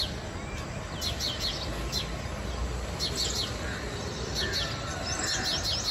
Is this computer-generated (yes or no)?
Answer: no